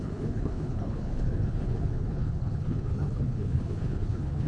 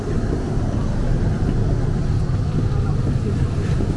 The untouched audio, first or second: second